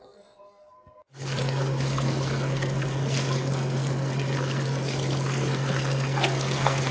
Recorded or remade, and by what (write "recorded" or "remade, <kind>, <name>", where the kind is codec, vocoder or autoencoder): remade, codec, SNAC